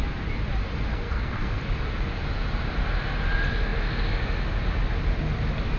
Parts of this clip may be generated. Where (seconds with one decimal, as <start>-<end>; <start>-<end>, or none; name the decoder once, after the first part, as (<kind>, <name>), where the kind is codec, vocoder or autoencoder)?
0.9-1.6 (codec, SNAC)